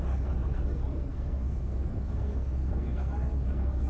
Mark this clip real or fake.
fake